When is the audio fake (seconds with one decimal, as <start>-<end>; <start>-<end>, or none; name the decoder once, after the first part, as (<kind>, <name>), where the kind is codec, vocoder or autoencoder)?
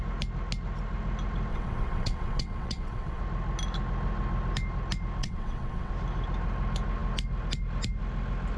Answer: 1.5-3.2 (vocoder, WaveNeXt); 5.2-5.9